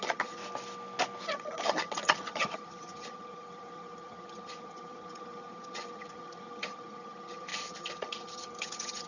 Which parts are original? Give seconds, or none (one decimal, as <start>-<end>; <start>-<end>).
0.4-1.2